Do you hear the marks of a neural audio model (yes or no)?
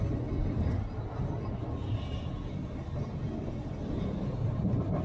no